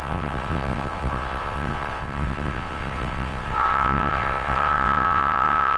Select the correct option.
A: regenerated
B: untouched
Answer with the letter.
A